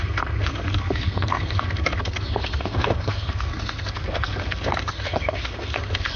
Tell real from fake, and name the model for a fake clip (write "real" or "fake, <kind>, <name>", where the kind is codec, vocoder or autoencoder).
fake, codec, SNAC